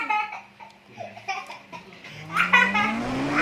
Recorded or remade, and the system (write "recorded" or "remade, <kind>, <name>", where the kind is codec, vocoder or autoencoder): recorded